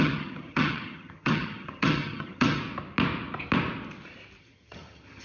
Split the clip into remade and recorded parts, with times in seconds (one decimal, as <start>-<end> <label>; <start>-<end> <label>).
0.0-2.6 remade; 2.6-4.4 recorded; 4.4-5.2 remade